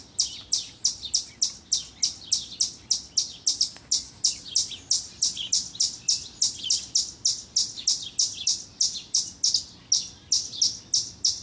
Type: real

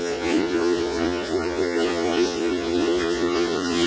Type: fake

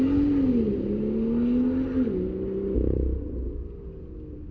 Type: real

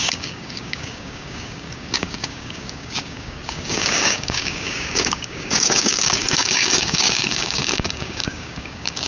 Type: fake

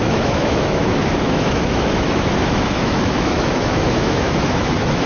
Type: fake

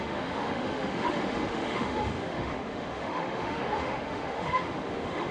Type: fake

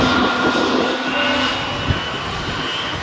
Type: real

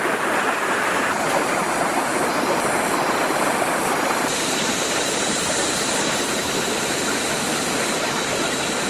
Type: real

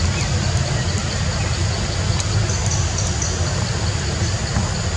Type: real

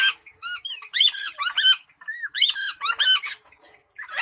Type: fake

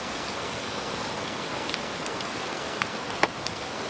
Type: fake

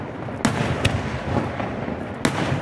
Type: real